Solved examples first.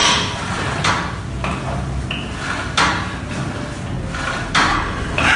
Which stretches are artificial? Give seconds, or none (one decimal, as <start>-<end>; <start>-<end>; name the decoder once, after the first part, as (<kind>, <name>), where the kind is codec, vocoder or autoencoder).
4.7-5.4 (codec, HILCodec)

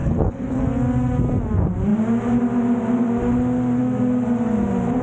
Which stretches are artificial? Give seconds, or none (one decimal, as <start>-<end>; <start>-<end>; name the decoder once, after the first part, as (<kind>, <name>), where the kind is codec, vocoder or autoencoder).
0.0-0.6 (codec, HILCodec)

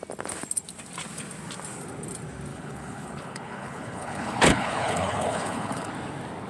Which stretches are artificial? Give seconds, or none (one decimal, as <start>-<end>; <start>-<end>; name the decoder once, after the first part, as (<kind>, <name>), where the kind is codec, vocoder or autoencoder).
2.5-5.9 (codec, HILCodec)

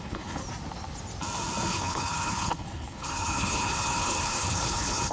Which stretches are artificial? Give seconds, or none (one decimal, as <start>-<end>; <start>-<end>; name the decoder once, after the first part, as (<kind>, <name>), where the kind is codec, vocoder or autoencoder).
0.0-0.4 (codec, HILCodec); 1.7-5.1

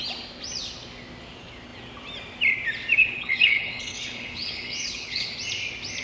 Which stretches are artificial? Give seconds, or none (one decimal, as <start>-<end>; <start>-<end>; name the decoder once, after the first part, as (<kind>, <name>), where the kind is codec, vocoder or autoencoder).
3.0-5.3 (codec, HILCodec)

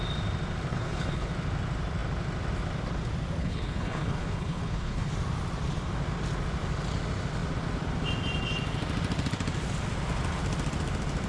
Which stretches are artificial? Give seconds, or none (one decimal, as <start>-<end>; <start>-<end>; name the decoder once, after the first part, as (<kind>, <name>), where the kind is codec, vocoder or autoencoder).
0.7-1.3 (codec, HILCodec); 3.4-5.1

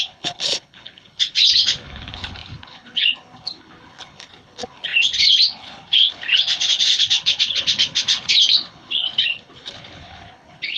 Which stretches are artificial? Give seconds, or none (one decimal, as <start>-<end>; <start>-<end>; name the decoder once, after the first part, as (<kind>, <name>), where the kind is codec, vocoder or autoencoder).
0.0-10.8 (codec, HILCodec)

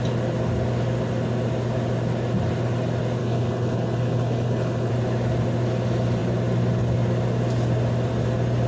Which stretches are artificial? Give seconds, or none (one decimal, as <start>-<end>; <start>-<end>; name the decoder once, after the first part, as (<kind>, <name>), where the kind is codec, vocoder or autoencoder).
3.2-4.9 (codec, HILCodec)